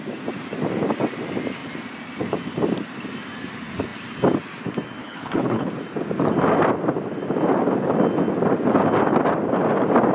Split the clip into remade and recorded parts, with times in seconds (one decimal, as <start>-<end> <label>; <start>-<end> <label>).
0.0-5.0 recorded; 5.0-5.7 remade; 5.7-10.1 recorded